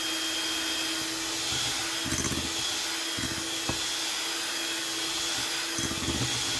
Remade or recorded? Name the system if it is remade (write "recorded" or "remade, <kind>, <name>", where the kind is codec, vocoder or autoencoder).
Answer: recorded